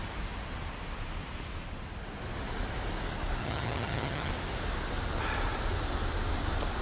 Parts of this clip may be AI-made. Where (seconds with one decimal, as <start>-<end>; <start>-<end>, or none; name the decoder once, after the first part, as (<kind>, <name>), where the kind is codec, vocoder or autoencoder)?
3.4-4.3 (vocoder, HiFi-GAN)